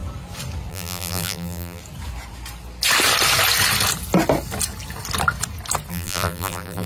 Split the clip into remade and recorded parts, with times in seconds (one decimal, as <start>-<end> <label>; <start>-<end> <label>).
0.0-0.7 recorded; 0.7-1.8 remade; 1.8-5.9 recorded; 5.9-6.9 remade